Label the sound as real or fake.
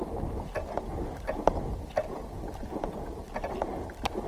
real